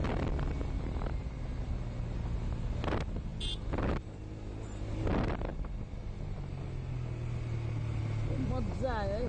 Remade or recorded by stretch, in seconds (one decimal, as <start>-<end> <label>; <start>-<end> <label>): 0.0-9.3 recorded